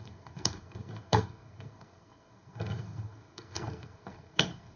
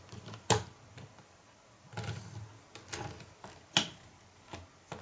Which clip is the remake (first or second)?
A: first